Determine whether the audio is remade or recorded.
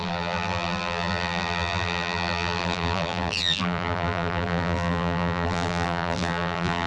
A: remade